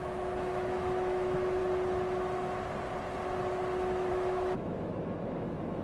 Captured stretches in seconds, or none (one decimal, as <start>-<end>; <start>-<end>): 1.6-4.1